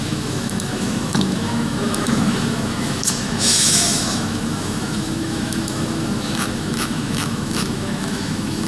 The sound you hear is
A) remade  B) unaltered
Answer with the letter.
A